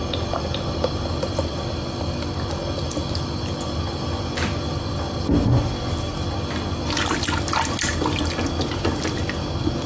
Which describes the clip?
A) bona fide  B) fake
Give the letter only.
A